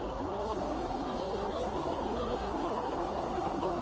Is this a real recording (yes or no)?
no